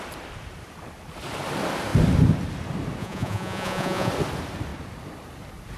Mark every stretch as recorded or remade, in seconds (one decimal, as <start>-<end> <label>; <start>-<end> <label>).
0.0-3.0 recorded; 3.0-4.1 remade; 4.1-5.8 recorded